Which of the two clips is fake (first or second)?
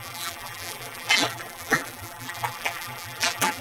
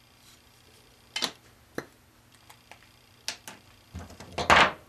first